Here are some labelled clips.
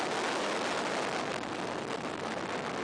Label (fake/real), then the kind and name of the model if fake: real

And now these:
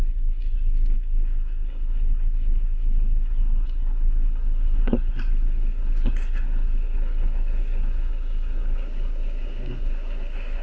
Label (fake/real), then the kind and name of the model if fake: fake, codec, SNAC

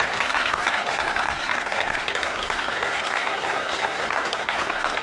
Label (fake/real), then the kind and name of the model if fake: fake, codec, SNAC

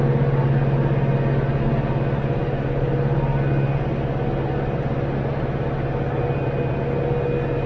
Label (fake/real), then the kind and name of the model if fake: real